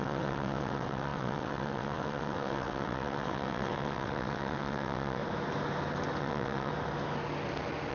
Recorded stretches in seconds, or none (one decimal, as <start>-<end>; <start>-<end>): 5.2-6.2; 6.7-7.9